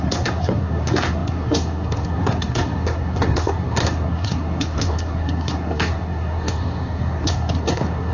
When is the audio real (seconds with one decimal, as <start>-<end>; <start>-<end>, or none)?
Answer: none